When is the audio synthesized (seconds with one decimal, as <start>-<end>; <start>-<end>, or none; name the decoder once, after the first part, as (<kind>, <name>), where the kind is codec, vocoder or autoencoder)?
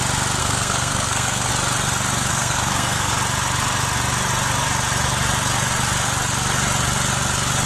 0.4-1.5 (codec, SNAC); 2.3-3.1